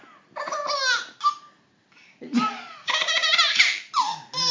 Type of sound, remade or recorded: recorded